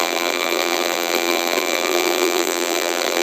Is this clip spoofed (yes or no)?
yes